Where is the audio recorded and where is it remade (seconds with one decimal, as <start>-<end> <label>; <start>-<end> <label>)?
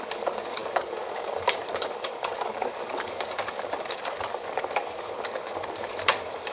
0.0-6.5 remade